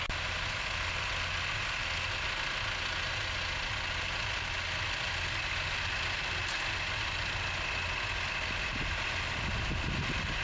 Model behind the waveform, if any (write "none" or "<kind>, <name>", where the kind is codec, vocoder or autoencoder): none